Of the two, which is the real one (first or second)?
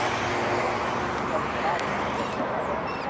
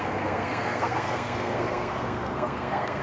first